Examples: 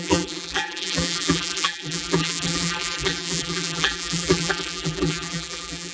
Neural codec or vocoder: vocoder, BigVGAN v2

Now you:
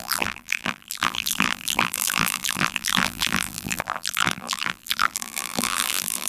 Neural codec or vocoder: vocoder, BigVGAN v2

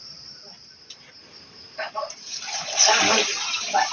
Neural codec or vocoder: vocoder, BigVGAN v2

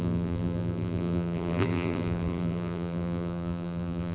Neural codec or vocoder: vocoder, BigVGAN v2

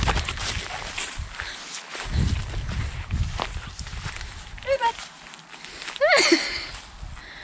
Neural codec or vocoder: none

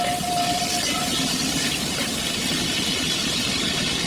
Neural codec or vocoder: none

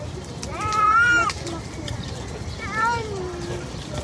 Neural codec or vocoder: vocoder, BigVGAN v2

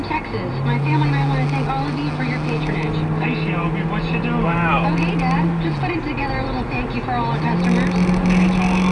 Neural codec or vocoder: none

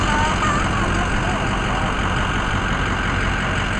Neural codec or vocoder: none